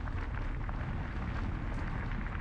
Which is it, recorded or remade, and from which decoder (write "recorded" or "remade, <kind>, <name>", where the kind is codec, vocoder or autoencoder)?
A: recorded